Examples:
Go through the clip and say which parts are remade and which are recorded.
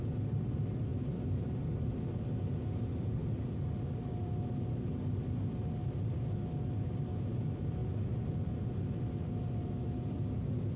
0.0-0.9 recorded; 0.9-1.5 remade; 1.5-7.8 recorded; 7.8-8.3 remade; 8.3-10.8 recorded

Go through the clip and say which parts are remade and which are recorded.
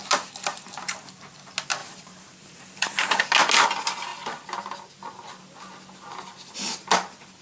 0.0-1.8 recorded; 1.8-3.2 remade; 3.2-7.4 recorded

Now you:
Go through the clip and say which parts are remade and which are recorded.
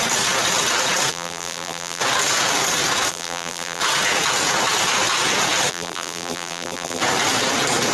0.0-1.1 recorded; 1.1-2.0 remade; 2.0-3.1 recorded; 3.1-3.8 remade; 3.8-5.7 recorded; 5.7-7.0 remade; 7.0-7.9 recorded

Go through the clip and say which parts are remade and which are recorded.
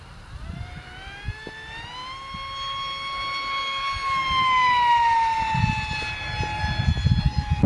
0.0-2.0 remade; 2.0-6.6 recorded; 6.6-7.7 remade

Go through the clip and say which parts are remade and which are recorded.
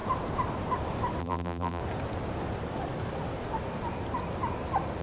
0.0-1.2 recorded; 1.2-1.8 remade; 1.8-5.0 recorded